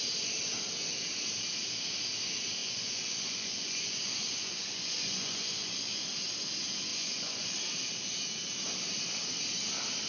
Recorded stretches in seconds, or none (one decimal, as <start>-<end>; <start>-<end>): 0.0-2.6; 6.0-6.9; 7.5-10.1

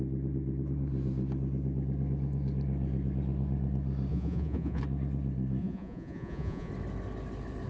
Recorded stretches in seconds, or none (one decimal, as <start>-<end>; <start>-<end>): 0.0-4.1; 4.8-5.6; 6.7-7.7

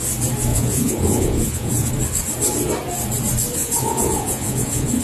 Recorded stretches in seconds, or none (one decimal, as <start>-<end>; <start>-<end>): 0.0-0.5; 1.9-3.6

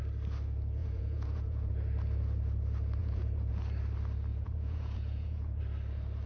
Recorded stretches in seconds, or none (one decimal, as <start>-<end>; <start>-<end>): 0.0-0.8; 1.7-3.0; 3.5-4.3; 5.6-6.3

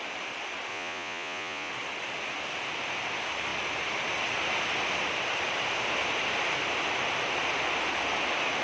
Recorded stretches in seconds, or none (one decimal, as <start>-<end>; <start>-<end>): 0.0-0.7; 1.7-8.6